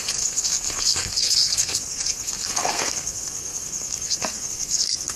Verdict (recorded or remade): remade